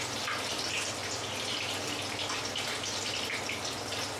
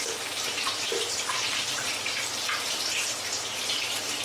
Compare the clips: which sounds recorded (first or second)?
first